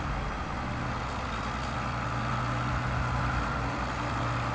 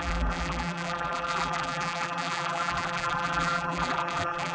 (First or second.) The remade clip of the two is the second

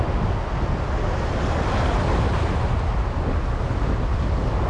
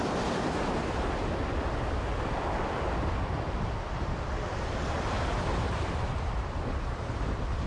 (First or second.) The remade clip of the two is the second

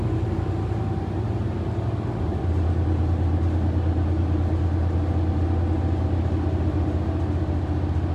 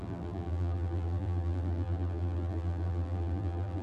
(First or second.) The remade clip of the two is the second